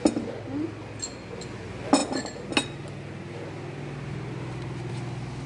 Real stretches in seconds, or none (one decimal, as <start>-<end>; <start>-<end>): 0.0-5.5